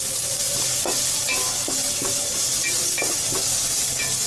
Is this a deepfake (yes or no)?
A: no